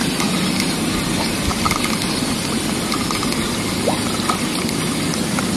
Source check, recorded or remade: recorded